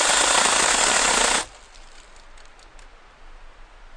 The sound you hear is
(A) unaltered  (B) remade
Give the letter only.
A